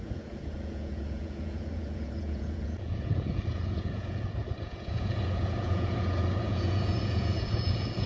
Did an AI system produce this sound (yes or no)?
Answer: yes